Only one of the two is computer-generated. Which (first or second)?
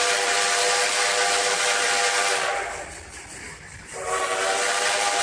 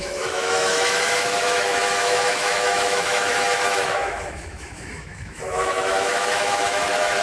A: second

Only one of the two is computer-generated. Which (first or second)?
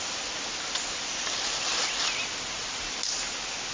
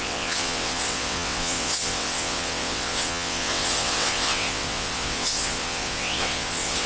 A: second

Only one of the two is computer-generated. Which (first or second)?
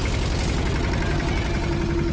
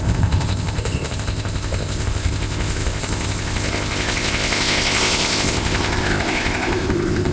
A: second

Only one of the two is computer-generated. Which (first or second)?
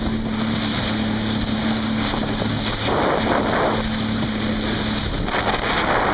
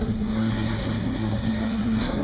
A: second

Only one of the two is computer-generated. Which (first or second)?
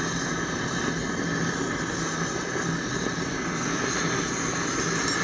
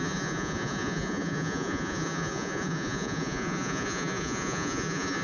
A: second